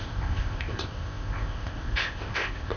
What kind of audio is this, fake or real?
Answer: fake